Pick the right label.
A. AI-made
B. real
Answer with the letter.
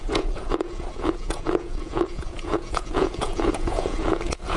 A